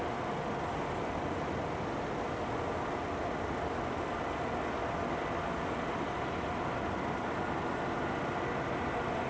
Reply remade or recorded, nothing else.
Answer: recorded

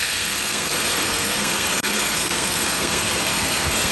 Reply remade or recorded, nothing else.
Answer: remade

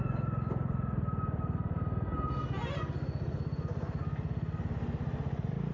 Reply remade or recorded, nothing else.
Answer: recorded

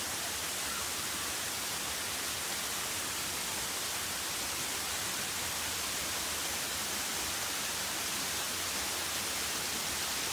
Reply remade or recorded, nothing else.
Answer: recorded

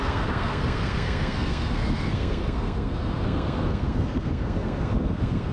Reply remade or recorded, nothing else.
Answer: remade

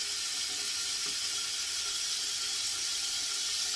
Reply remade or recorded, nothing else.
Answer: recorded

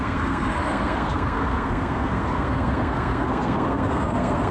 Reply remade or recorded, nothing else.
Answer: remade